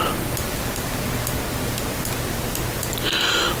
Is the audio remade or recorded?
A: recorded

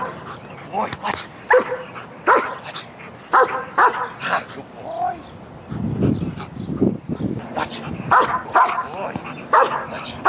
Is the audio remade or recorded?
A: recorded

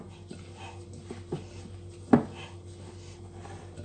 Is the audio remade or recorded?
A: recorded